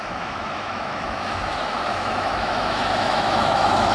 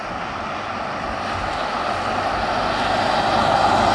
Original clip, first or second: second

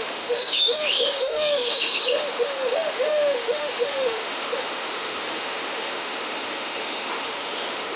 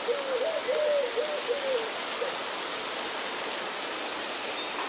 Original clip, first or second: second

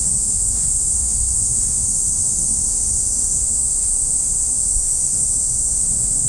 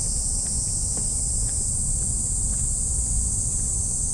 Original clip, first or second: second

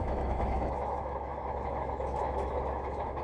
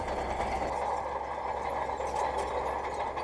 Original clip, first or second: second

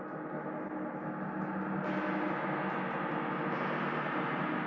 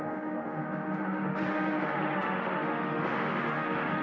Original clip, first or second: first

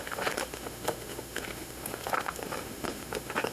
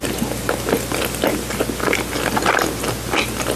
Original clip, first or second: second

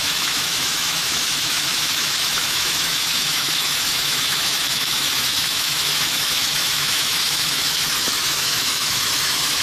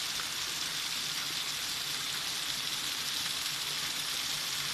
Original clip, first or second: second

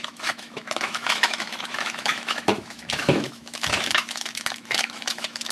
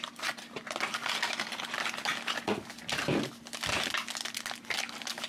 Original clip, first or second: second